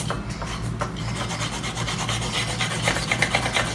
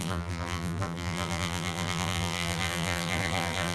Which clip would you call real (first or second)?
first